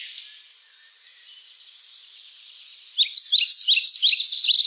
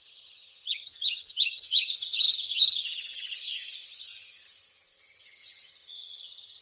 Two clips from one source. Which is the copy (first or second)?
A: second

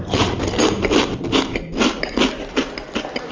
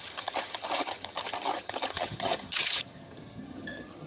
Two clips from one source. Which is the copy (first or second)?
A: second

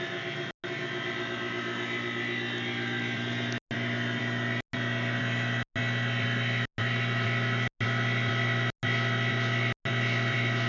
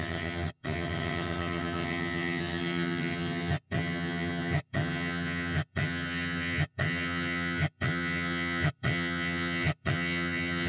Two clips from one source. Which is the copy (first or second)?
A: second